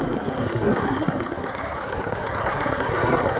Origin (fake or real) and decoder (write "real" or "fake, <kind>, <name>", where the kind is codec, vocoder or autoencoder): fake, codec, SNAC